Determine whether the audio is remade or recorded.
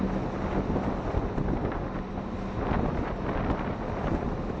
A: recorded